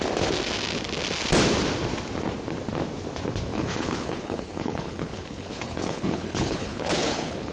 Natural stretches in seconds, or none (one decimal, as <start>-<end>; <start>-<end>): 0.0-3.5